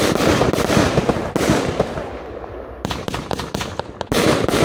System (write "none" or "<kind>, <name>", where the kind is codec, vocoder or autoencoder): none